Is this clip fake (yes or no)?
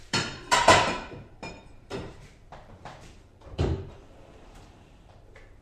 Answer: yes